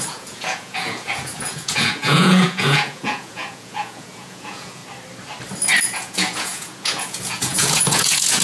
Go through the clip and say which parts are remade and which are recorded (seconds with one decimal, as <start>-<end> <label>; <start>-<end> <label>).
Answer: 0.0-4.8 remade; 4.8-5.8 recorded; 5.8-8.4 remade